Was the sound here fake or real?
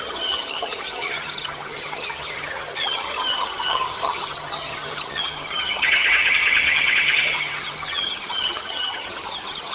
fake